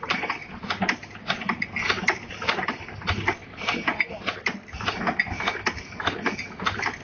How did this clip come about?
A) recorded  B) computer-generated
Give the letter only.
A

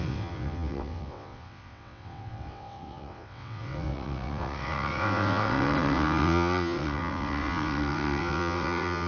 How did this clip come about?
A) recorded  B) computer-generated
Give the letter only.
B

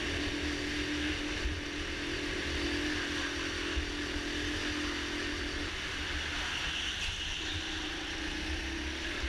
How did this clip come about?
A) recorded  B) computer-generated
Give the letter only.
A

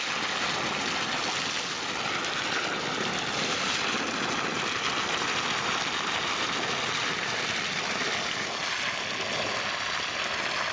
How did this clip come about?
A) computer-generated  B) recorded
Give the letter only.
B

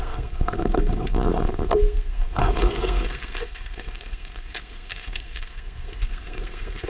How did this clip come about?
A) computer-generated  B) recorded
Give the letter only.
A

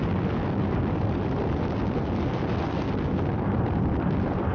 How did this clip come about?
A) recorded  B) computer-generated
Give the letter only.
A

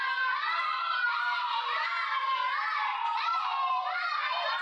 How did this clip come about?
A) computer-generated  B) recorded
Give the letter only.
A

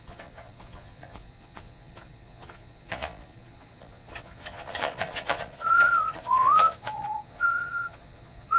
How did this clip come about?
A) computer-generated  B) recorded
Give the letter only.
A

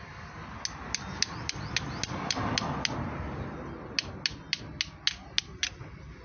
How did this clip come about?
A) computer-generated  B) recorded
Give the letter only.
B